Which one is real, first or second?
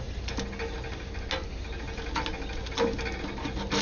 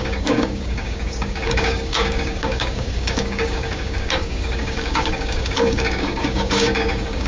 first